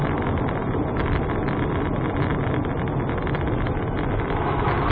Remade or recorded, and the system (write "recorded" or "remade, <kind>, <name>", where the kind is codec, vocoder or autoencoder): recorded